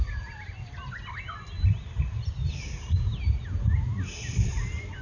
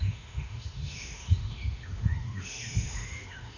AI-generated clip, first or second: second